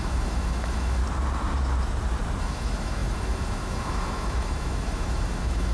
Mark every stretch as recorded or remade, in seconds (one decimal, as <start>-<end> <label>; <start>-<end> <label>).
0.0-1.0 remade; 1.0-2.4 recorded; 2.4-5.7 remade